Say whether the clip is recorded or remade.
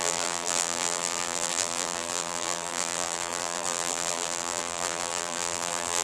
remade